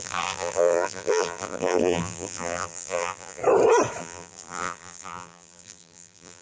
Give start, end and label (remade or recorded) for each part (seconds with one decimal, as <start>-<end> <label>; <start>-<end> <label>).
0.0-3.4 remade; 3.4-4.0 recorded; 4.0-6.4 remade